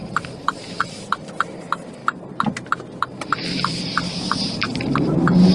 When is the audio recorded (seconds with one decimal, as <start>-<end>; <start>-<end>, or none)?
1.3-2.0; 3.0-3.7